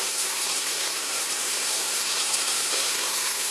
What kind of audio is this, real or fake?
fake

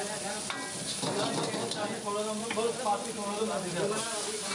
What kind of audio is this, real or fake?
real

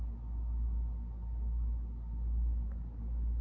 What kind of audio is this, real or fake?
real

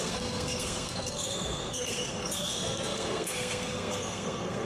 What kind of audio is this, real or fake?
fake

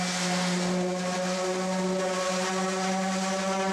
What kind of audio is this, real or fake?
real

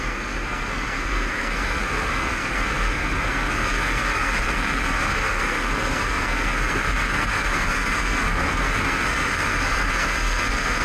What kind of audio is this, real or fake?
fake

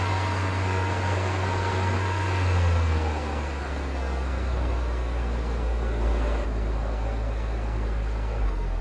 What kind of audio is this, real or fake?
fake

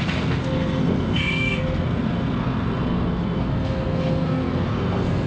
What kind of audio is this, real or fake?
fake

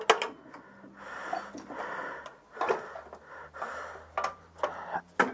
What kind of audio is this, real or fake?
real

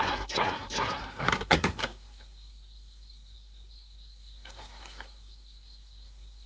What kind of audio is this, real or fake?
fake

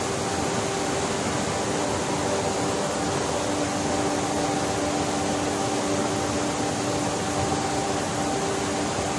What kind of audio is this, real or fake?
real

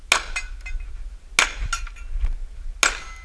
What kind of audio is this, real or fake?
real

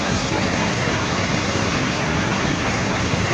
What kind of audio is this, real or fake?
fake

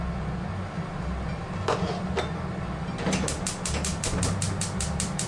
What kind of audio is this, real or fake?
real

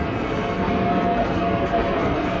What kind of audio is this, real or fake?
fake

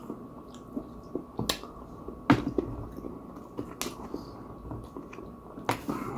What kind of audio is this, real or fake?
real